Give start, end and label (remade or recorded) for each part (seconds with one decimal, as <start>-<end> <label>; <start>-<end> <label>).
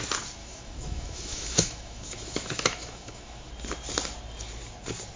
0.0-0.4 recorded; 0.4-3.5 remade; 3.5-5.2 recorded